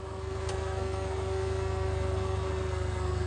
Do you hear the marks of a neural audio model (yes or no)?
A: yes